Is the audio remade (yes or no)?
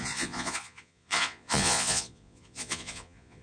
yes